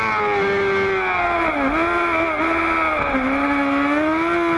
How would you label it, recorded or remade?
recorded